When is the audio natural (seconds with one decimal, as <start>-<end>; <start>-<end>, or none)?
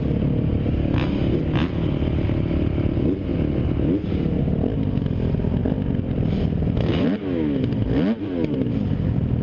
0.0-5.6; 7.2-9.4